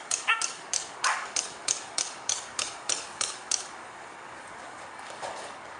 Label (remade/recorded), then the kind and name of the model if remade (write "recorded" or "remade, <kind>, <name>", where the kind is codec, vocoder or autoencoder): remade, codec, DAC